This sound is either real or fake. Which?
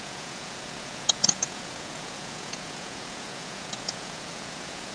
fake